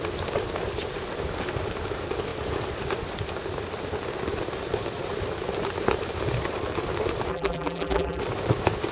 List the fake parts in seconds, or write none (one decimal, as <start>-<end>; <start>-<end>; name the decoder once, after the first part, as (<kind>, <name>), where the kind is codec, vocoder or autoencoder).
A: 7.3-8.2 (vocoder, BigVGAN v2)